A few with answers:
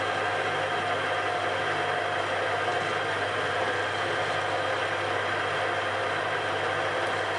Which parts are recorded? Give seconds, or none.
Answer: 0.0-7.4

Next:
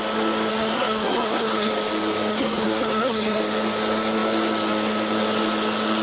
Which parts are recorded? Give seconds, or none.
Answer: 0.0-0.5; 1.7-2.3; 3.4-6.0

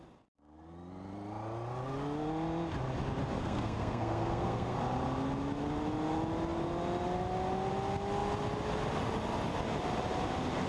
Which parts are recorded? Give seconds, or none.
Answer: 0.0-3.4; 4.8-10.7